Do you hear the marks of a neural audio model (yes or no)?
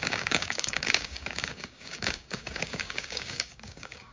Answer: yes